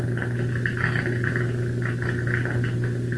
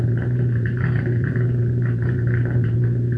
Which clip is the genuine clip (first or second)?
first